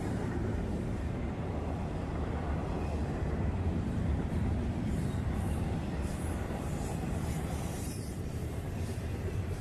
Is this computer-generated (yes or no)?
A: yes